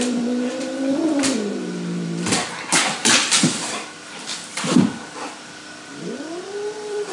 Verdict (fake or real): fake